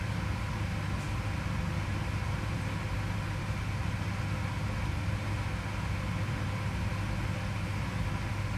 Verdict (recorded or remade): recorded